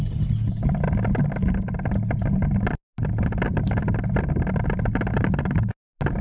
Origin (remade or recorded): recorded